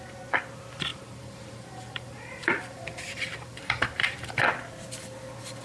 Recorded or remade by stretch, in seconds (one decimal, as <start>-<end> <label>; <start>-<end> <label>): 0.0-0.9 recorded; 0.9-4.3 remade; 4.3-5.6 recorded